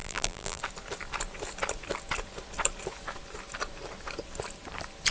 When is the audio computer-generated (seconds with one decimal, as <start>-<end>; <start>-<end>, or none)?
0.0-0.6